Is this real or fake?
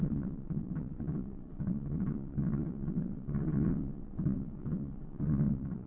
fake